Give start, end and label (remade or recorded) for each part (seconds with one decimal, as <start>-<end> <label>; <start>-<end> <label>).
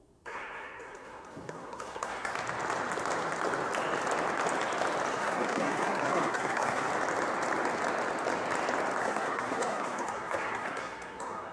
0.0-2.3 remade; 2.3-5.1 recorded; 5.1-6.9 remade; 6.9-9.0 recorded; 9.0-11.5 remade